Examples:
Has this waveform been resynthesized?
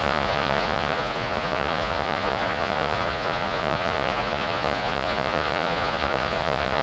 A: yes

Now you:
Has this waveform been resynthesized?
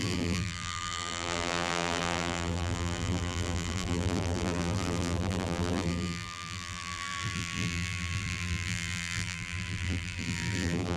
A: yes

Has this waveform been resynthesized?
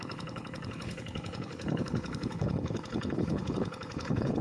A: yes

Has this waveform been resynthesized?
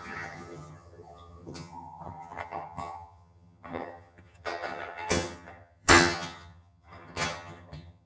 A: yes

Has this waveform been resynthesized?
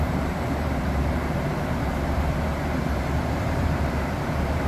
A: yes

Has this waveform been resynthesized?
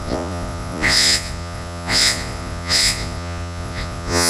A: yes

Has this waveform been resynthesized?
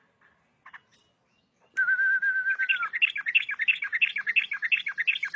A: no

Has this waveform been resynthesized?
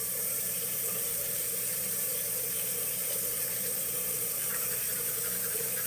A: yes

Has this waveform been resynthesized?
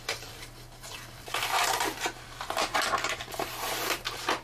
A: yes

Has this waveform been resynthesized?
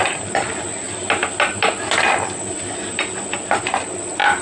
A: no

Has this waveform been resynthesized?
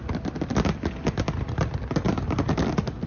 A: no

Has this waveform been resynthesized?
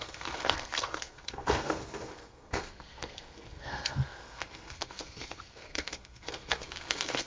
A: yes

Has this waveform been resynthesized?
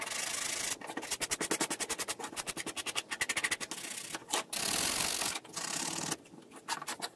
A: no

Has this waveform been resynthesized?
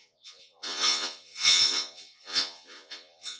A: yes